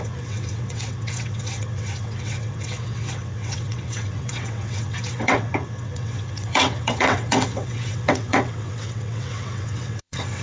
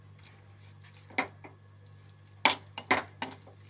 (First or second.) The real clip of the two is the second